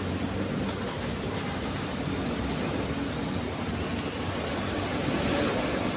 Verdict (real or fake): real